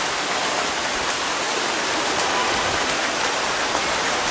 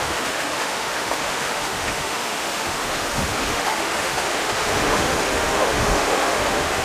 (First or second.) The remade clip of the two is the second